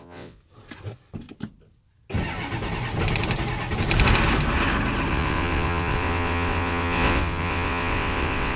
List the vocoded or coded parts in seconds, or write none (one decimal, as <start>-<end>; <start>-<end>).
0.0-0.4; 5.1-8.6